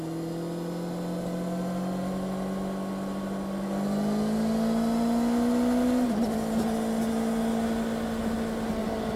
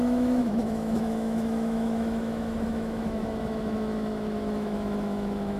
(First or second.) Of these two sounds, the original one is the first